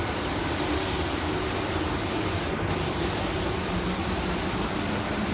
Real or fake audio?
real